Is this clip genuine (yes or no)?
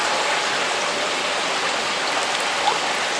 yes